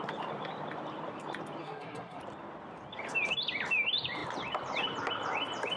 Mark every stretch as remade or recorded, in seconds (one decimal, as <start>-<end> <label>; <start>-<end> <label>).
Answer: 0.0-1.6 recorded; 1.6-2.2 remade; 2.2-5.8 recorded